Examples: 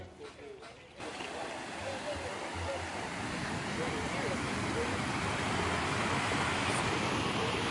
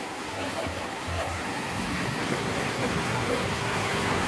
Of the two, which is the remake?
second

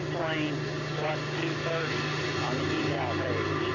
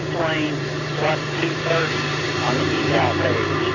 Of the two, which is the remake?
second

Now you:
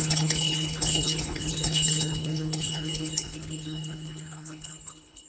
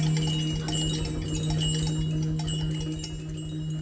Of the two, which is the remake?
first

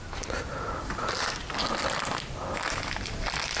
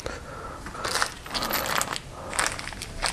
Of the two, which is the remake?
first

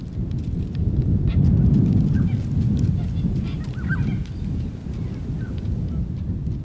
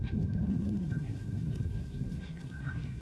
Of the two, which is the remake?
second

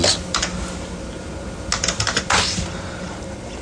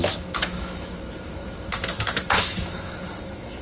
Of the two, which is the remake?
second